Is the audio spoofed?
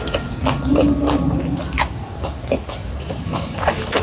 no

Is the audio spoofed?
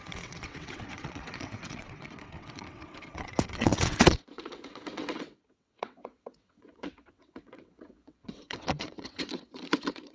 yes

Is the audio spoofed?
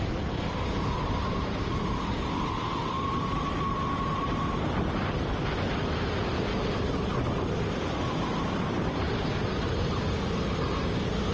no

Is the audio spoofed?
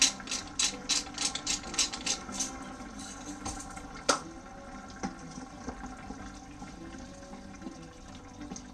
no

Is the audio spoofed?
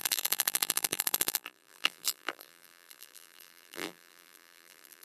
yes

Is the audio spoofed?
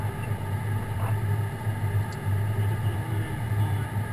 no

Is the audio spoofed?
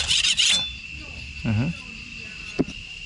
no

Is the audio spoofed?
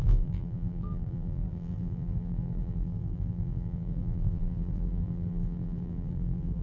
yes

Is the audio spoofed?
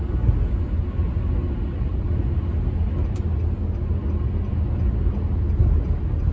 no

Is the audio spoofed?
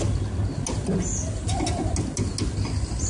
no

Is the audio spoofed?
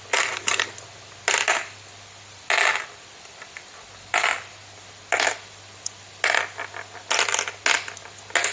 no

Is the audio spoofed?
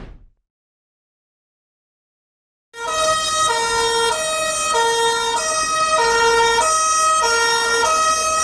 no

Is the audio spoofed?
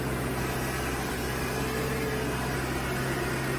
no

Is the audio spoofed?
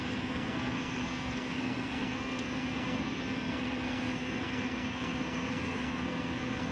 yes